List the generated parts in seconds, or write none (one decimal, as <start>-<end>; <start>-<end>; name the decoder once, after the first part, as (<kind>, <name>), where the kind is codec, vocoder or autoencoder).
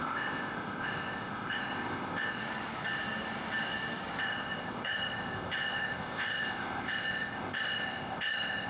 0.0-2.4 (codec, ZipCodec); 4.2-8.7